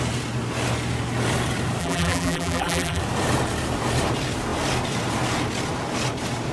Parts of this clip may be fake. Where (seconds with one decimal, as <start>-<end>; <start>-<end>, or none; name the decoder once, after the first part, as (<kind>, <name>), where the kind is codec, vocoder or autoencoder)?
1.8-3.0 (vocoder, BigVGAN v2)